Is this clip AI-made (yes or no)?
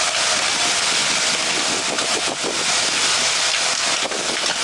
no